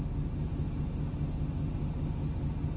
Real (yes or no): yes